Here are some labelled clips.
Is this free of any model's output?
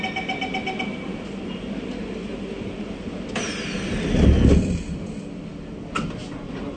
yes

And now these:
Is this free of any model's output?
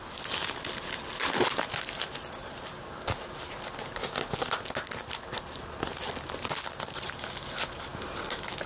yes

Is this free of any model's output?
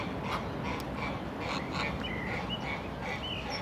yes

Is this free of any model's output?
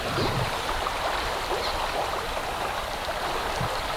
no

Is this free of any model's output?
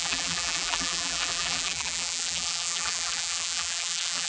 no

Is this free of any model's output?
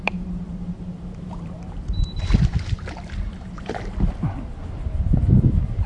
no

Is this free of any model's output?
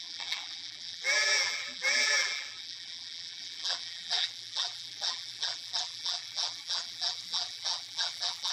no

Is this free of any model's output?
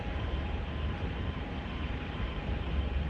no